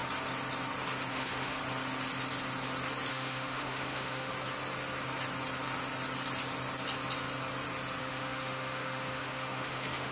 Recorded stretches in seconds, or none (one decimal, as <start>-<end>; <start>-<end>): 0.0-1.1; 1.6-3.1; 4.3-8.0